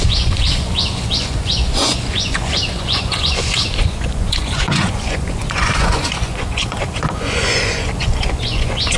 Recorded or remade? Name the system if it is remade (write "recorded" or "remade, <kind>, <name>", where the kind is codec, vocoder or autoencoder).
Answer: remade, vocoder, Vocos